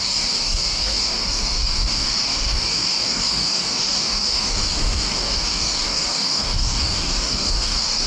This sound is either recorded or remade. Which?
remade